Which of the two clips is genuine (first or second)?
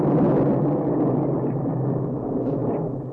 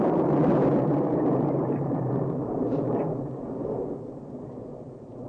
first